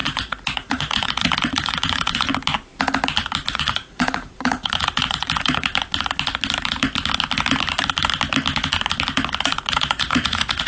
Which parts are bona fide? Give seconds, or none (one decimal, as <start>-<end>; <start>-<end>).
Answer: 2.3-3.5; 5.7-9.7